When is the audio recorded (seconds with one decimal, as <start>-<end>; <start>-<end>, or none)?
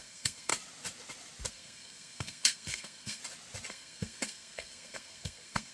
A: 0.5-1.5; 3.2-3.7